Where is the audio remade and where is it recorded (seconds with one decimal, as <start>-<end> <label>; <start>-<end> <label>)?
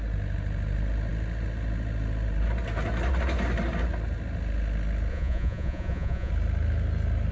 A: 0.0-5.1 recorded; 5.1-6.3 remade; 6.3-7.3 recorded